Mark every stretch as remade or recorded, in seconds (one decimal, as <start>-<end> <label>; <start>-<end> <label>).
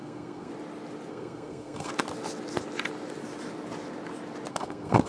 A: 0.0-0.5 remade; 0.5-1.1 recorded; 1.1-1.9 remade; 1.9-4.5 recorded; 4.5-5.1 remade